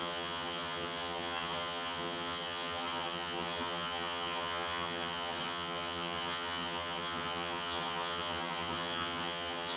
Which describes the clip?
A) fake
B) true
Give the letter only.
A